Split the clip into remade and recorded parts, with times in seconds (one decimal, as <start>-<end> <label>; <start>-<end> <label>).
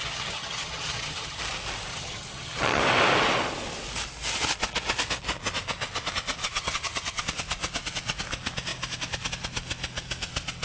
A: 0.0-1.4 remade; 1.4-1.9 recorded; 1.9-2.8 remade; 2.8-6.4 recorded; 6.4-7.2 remade; 7.2-10.6 recorded